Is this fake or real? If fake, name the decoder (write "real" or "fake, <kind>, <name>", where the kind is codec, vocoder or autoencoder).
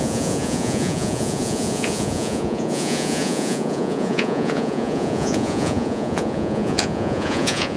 fake, vocoder, Vocos